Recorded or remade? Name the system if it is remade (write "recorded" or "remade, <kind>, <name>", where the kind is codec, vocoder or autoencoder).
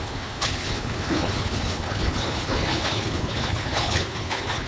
remade, codec, HILCodec